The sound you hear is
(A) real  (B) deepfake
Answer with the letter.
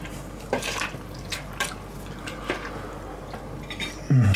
A